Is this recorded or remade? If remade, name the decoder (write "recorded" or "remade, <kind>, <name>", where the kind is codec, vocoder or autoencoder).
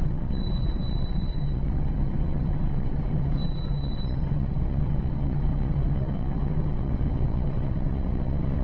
remade, vocoder, WaveNeXt